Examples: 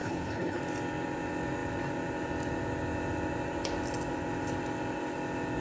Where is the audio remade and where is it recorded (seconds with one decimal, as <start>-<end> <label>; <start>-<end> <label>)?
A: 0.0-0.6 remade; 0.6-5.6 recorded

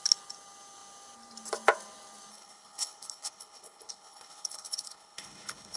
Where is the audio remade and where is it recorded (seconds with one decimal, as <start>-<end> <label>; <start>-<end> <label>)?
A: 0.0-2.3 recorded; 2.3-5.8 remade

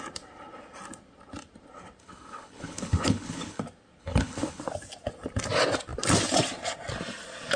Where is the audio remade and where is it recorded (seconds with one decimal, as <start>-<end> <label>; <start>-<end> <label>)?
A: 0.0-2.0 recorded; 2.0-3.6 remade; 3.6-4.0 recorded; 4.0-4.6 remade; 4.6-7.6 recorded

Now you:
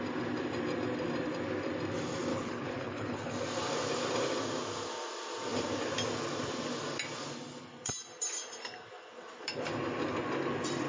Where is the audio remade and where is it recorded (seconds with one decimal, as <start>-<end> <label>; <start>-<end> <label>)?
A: 0.0-2.3 recorded; 2.3-3.3 remade; 3.3-10.9 recorded

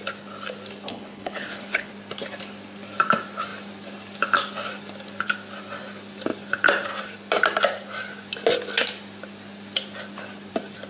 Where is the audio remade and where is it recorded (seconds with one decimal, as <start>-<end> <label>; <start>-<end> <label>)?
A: 0.0-0.9 recorded; 0.9-1.9 remade; 1.9-10.9 recorded